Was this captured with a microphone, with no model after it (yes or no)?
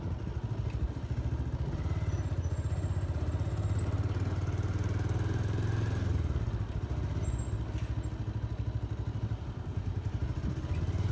yes